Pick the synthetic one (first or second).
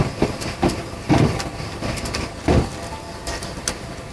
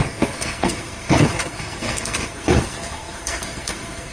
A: second